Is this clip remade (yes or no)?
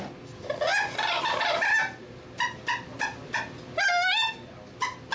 no